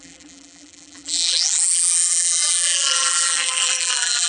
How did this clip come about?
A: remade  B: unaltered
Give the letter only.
A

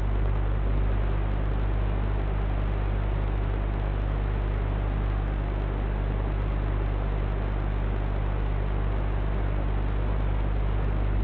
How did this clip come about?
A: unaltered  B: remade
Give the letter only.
A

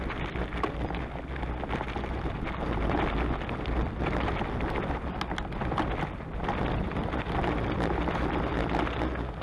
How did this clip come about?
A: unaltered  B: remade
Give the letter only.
A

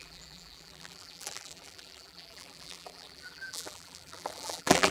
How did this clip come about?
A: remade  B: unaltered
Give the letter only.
A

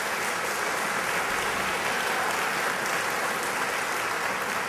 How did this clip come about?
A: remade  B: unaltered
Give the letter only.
B